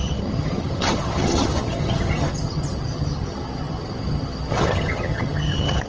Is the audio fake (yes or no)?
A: yes